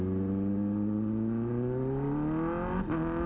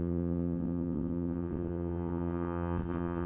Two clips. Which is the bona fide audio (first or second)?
first